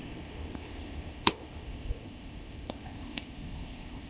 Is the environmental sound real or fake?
fake